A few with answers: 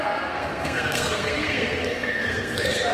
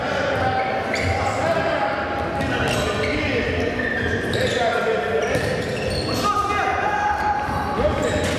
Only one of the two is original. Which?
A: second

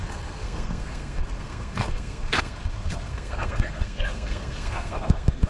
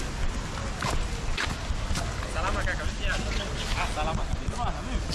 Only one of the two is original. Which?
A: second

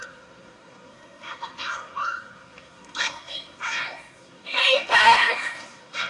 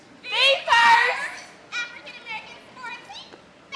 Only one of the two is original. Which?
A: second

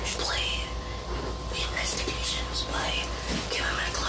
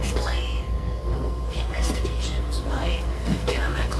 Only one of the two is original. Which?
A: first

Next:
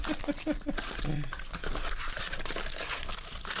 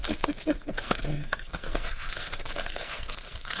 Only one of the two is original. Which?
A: first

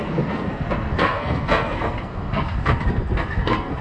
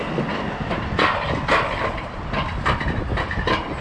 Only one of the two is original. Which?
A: second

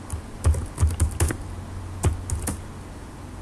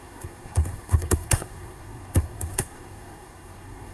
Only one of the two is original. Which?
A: first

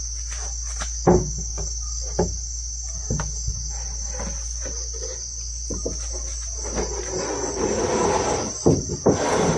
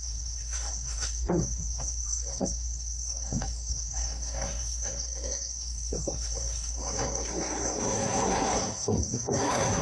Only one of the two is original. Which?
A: first